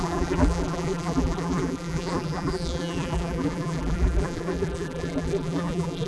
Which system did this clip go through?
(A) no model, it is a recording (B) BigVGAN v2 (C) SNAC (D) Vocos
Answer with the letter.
B